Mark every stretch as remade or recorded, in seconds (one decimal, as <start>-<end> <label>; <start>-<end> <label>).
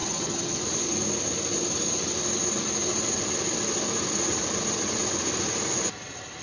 0.0-0.6 remade; 0.6-6.4 recorded